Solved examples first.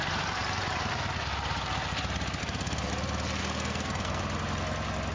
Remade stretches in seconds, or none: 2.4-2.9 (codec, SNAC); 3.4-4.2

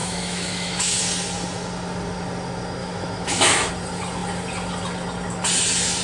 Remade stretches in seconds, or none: 0.0-1.0 (autoencoder, DAC-VAE); 2.8-3.7

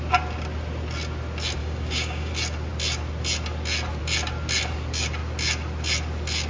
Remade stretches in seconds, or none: 1.6-2.3 (codec, DAC)

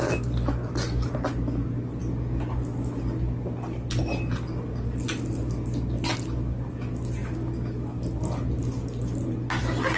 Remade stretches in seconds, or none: none

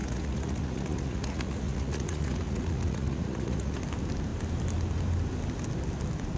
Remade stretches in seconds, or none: 0.0-3.8 (vocoder, Vocos)